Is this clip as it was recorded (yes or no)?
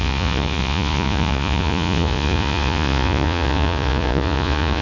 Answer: no